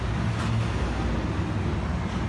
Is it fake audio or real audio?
real